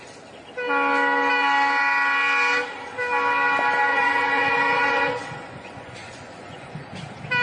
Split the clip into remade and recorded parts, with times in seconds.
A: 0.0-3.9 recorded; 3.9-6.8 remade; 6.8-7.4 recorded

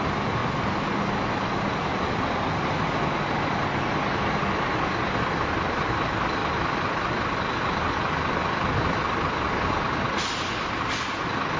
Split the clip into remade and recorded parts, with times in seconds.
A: 0.0-11.6 recorded

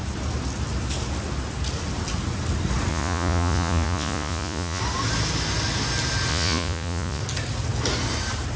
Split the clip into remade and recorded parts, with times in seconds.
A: 0.0-2.9 recorded; 2.9-4.8 remade; 4.8-6.3 recorded; 6.3-7.2 remade; 7.2-8.6 recorded

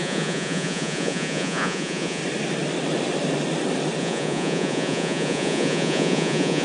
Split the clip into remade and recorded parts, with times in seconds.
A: 0.0-2.2 remade; 2.2-4.0 recorded; 4.0-6.6 remade